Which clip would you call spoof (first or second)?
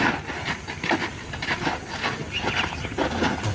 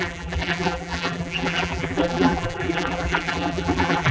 second